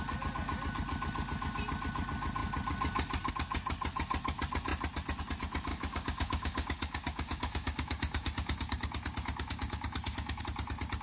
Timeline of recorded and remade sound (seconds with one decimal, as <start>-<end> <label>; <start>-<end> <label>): 0.0-5.7 recorded; 5.7-10.4 remade; 10.4-11.0 recorded